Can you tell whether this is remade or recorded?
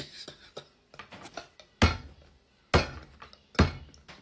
recorded